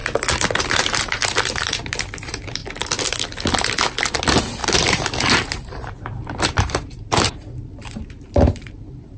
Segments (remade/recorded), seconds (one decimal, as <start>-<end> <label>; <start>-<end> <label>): 0.0-0.6 recorded; 0.6-2.6 remade; 2.6-4.1 recorded; 4.1-9.2 remade